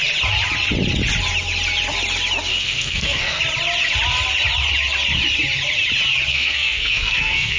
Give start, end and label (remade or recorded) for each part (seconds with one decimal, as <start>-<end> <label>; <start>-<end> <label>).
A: 0.0-2.5 recorded; 2.5-3.4 remade; 3.4-6.3 recorded; 6.3-7.6 remade